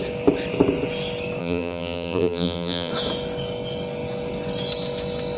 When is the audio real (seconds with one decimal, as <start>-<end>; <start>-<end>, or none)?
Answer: 0.0-1.4; 2.9-5.4